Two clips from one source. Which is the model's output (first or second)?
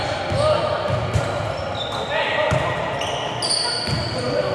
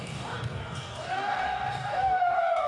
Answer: second